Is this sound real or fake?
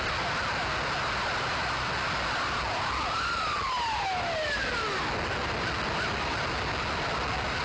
real